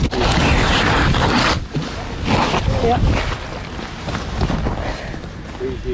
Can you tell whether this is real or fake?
real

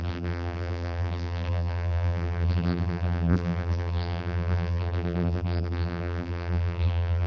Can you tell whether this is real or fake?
fake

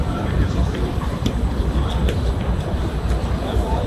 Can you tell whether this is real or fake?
fake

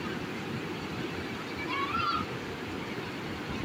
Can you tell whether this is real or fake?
real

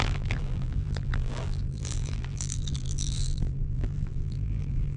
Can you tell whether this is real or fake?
fake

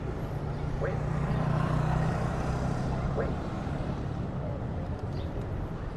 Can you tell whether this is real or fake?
fake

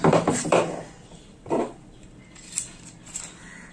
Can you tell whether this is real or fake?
fake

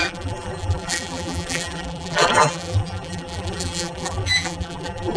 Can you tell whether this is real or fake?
fake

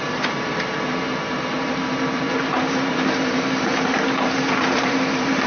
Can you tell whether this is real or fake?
fake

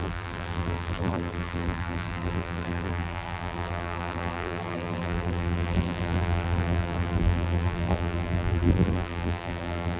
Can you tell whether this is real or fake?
fake